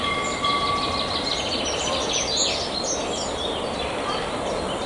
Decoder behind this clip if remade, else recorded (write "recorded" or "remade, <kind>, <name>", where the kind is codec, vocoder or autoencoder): recorded